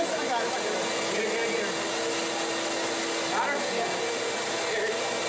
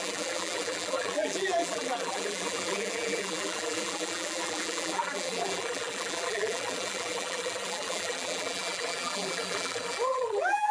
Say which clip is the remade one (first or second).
second